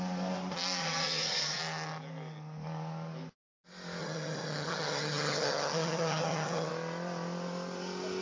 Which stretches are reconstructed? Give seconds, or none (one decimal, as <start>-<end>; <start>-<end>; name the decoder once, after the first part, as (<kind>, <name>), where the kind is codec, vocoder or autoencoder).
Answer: 0.8-1.6 (vocoder, HiFi-GAN); 4.0-6.7